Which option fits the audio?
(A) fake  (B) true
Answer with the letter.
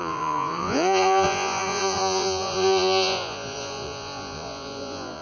A